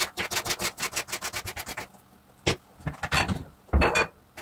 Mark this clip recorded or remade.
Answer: recorded